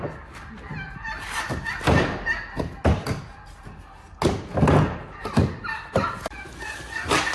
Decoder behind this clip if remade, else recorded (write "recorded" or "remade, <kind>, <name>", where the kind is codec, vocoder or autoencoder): recorded